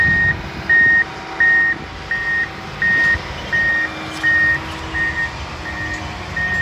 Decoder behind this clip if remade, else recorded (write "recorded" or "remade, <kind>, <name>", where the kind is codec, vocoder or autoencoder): recorded